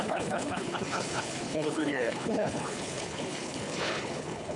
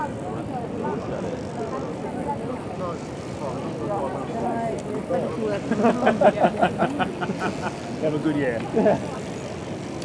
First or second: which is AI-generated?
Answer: first